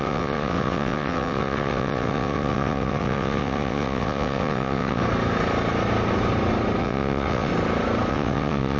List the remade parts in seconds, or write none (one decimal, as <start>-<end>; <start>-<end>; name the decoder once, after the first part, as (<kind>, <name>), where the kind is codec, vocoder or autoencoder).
0.0-5.0 (vocoder, WaveNeXt); 6.8-7.5; 8.1-8.8